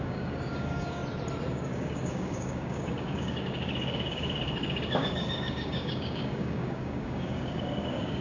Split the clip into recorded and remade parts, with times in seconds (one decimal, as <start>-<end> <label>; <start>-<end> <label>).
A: 0.0-1.0 remade; 1.0-1.5 recorded; 1.5-8.2 remade